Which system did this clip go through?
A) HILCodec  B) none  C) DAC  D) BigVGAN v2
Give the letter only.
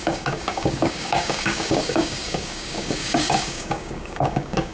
C